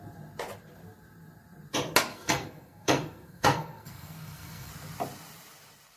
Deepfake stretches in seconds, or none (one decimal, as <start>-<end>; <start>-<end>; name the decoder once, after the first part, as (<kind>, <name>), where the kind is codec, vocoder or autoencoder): 2.1-4.7 (codec, SNAC)